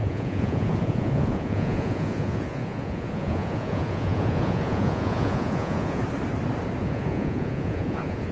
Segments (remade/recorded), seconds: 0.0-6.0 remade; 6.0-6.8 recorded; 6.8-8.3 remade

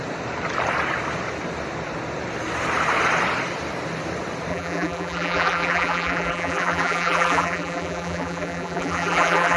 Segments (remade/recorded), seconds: 0.0-4.5 recorded; 4.5-9.6 remade

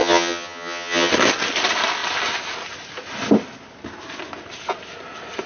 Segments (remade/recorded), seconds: 0.0-1.1 remade; 1.1-5.5 recorded

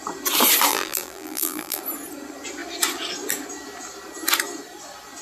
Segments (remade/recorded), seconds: 0.0-0.7 recorded; 0.7-1.8 remade; 1.8-5.2 recorded

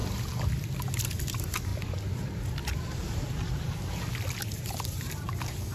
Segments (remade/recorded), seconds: 0.0-1.2 recorded; 1.2-1.7 remade; 1.7-4.4 recorded; 4.4-5.7 remade